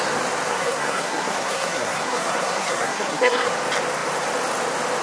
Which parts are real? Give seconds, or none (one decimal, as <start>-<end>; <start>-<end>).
0.0-0.5; 3.5-5.0